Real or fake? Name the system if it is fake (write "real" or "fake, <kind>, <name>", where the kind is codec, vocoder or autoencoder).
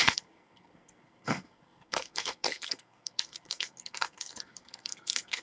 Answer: fake, codec, SNAC